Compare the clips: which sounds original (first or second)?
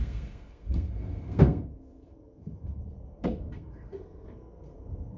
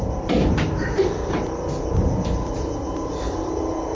second